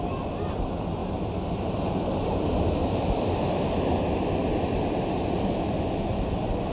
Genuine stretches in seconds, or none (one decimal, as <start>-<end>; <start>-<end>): 0.0-6.7